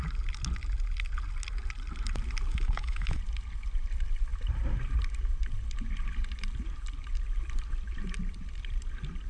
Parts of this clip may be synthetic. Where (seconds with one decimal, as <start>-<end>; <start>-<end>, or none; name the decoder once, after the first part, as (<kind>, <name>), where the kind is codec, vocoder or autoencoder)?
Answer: 2.5-3.2 (autoencoder, DAC-VAE)